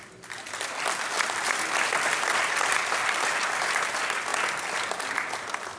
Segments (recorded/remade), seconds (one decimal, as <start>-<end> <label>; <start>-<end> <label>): 0.0-5.8 recorded